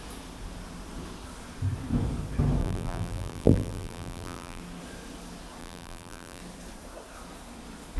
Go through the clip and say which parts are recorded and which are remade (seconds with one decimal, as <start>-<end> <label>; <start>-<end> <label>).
0.0-2.6 recorded; 2.6-4.6 remade; 4.6-5.6 recorded; 5.6-6.4 remade; 6.4-8.0 recorded